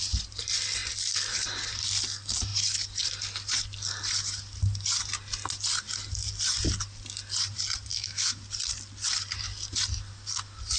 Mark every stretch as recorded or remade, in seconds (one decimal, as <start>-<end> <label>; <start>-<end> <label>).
0.0-7.9 recorded; 7.9-8.4 remade; 8.4-10.8 recorded